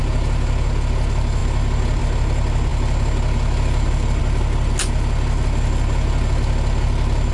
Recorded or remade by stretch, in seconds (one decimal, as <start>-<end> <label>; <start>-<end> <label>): 0.0-7.3 recorded